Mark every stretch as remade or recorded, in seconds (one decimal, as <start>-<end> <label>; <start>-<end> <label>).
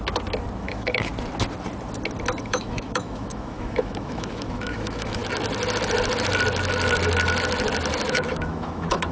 0.0-0.6 recorded; 0.6-1.1 remade; 1.1-2.4 recorded; 2.4-5.2 remade; 5.2-8.1 recorded; 8.1-9.1 remade